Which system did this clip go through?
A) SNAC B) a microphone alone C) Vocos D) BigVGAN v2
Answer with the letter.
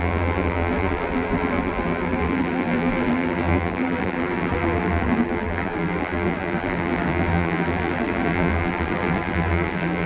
D